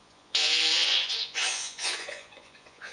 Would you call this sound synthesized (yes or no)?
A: yes